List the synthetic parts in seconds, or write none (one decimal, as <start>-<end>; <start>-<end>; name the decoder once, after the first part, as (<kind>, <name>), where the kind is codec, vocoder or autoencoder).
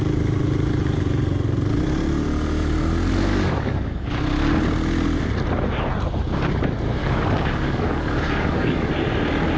3.3-4.2 (codec, DAC); 7.0-8.9